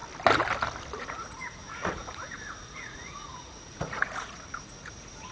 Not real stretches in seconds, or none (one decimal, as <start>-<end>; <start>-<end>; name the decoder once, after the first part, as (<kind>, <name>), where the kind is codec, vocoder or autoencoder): 1.0-5.3 (vocoder, Vocos)